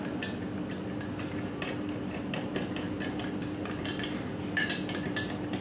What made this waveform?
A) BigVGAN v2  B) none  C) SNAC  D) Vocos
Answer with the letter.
B